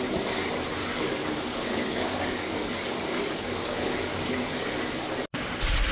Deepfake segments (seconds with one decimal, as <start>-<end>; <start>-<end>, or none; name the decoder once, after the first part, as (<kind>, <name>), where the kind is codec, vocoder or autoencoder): 0.8-4.3 (codec, DAC)